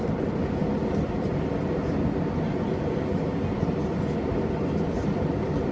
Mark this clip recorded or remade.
recorded